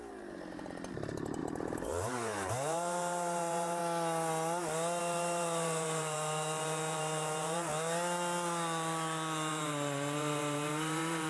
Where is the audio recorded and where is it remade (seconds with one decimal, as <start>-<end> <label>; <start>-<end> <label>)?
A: 0.0-3.8 remade; 3.8-5.0 recorded; 5.0-7.7 remade; 7.7-9.5 recorded; 9.5-11.3 remade